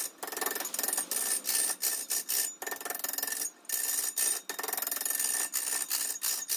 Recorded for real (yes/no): yes